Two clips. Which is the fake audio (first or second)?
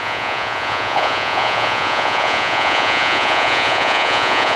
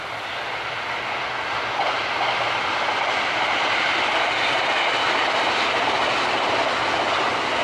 first